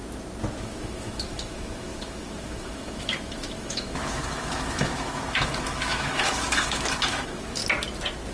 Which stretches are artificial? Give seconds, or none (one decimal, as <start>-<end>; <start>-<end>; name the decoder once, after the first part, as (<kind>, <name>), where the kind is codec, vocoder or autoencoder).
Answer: 0.6-7.6 (autoencoder, DAC-VAE)